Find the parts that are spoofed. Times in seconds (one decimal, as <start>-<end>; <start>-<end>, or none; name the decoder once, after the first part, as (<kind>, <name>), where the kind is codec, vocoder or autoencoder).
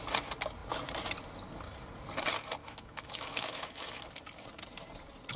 2.6-4.0 (autoencoder, DAC-VAE)